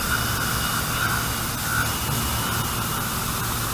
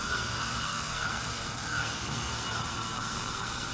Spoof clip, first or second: second